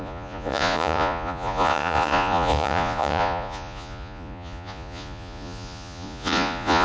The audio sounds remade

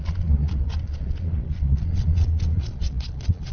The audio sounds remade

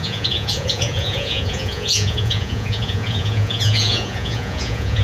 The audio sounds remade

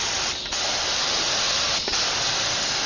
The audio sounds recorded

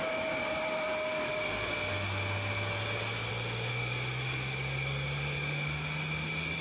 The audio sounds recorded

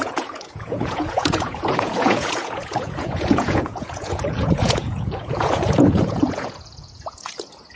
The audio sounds remade